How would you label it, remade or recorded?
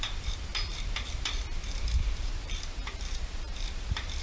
remade